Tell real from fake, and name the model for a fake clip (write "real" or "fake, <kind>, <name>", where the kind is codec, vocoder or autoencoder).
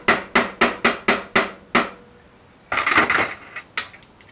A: real